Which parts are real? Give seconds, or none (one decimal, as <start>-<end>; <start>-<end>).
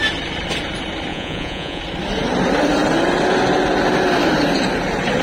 0.0-1.1; 1.8-5.2